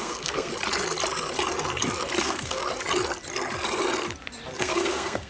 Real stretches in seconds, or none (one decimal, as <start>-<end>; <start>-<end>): 0.5-2.2; 2.6-4.6